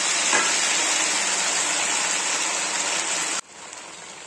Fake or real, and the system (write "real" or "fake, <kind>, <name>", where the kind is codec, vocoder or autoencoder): real